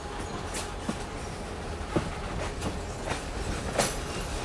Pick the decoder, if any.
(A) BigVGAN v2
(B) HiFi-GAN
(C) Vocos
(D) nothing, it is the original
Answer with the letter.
D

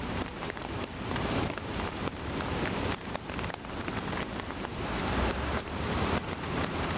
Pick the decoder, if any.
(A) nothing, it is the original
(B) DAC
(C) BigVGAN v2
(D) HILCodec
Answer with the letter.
C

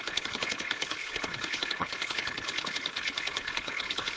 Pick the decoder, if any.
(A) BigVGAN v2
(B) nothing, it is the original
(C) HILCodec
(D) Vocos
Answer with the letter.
C